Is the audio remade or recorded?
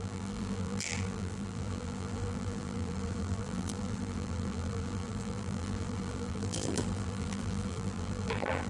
remade